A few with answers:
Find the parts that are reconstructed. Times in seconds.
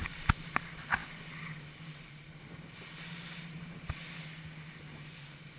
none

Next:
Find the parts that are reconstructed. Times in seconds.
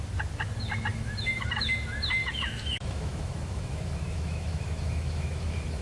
0.9-1.7 (autoencoder, DAC-VAE); 2.2-5.8